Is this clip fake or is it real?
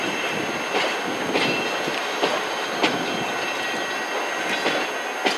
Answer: real